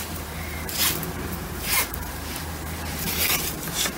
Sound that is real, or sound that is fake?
fake